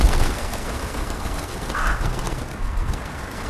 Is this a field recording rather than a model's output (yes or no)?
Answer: no